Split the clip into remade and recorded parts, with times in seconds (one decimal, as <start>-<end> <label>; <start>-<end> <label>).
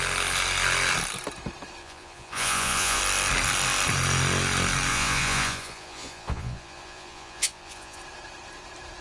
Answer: 0.0-1.8 recorded; 1.8-3.0 remade; 3.0-4.9 recorded; 4.9-8.0 remade; 8.0-9.0 recorded